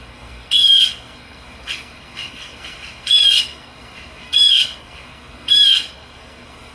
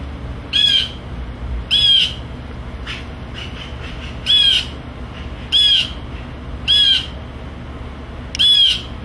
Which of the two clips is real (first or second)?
second